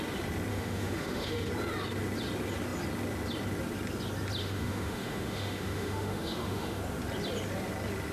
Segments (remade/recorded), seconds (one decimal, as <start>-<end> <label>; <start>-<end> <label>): 0.0-0.5 recorded; 0.5-1.5 remade; 1.5-4.4 recorded; 4.4-6.8 remade; 6.8-8.1 recorded